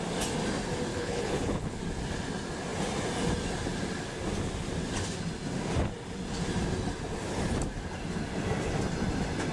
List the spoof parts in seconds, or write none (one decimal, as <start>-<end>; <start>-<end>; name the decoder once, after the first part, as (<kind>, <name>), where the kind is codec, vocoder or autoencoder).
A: 0.9-1.8 (codec, HILCodec)